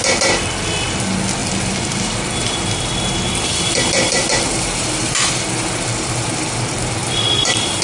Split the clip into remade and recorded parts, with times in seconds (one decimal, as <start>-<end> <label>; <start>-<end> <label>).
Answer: 0.0-1.4 recorded; 1.4-5.3 remade; 5.3-7.0 recorded; 7.0-7.8 remade